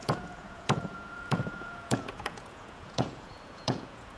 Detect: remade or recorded remade